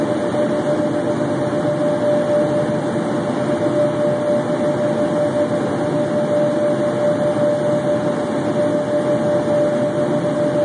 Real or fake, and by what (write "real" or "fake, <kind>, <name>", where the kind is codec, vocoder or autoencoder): real